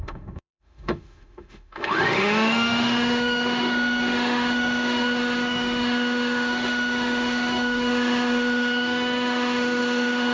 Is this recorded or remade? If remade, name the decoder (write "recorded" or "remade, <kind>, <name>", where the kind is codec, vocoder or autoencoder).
remade, autoencoder, DAC-VAE